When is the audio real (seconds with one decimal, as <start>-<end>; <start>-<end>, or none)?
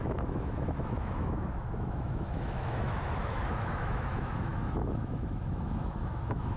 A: none